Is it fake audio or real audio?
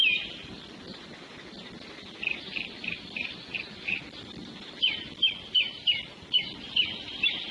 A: real